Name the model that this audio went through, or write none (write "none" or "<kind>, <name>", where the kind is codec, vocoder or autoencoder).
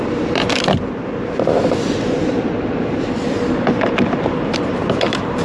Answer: vocoder, BigVGAN v2